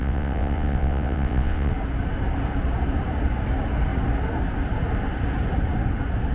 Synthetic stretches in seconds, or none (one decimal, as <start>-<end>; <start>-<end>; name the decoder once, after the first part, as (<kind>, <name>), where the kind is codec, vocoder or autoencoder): 0.0-1.7 (vocoder, WaveNeXt)